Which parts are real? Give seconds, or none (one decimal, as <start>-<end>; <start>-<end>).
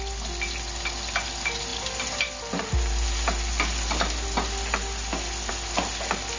0.0-6.4